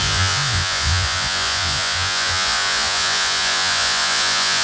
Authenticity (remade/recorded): remade